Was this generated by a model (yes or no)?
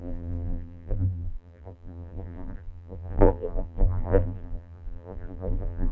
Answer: yes